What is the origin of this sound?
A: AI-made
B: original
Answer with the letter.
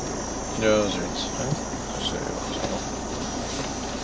B